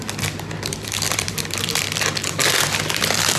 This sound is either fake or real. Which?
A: fake